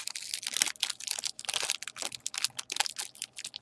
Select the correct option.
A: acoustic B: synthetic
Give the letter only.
A